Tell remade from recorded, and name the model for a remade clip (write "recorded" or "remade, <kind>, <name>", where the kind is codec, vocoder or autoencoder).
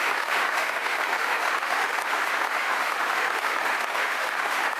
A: remade, autoencoder, DAC-VAE